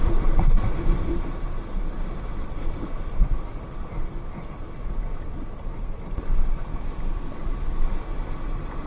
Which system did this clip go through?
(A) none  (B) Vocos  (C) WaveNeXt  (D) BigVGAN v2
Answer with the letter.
A